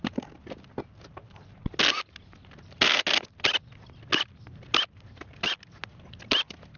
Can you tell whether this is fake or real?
real